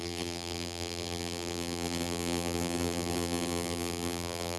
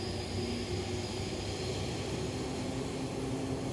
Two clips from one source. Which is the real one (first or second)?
second